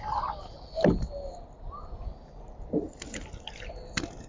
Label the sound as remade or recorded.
recorded